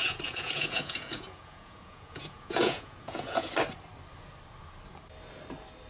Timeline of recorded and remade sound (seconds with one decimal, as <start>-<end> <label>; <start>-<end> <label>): 0.0-3.5 remade; 3.5-5.9 recorded